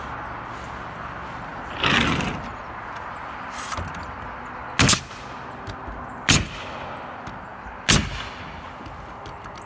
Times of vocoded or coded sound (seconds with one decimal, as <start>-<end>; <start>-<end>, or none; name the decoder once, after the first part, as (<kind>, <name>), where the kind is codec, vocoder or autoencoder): none

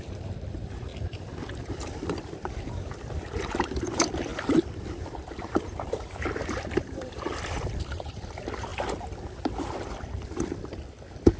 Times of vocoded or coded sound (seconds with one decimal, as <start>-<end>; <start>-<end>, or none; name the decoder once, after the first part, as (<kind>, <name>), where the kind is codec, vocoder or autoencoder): 0.0-0.9 (vocoder, BigVGAN v2); 1.6-4.3; 6.8-8.7; 9.8-11.4

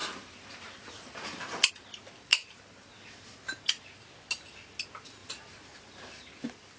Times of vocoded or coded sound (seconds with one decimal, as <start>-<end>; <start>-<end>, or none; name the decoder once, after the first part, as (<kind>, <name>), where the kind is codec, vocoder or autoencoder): 0.0-1.7 (vocoder, BigVGAN v2); 2.3-2.9

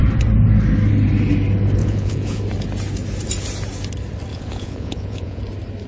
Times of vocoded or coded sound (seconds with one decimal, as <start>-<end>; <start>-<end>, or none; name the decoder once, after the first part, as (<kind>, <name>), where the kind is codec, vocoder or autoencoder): 1.8-2.4 (vocoder, Vocos); 4.3-5.4

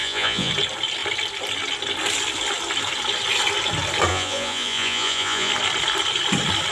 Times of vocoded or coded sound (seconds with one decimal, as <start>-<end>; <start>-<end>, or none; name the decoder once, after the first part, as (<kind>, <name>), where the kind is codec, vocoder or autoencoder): 0.0-0.5 (vocoder, Vocos); 4.1-5.5

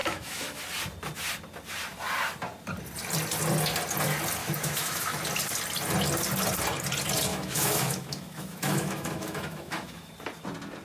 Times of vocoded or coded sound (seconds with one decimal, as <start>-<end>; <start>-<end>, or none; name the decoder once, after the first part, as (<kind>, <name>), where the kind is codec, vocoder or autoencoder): 0.0-0.6 (autoencoder, DAC-VAE); 4.4-5.2; 7.3-10.1